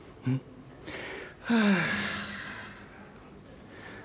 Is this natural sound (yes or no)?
yes